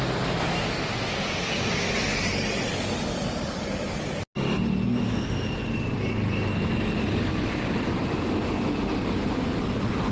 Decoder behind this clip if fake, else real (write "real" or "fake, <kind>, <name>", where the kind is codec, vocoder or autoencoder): real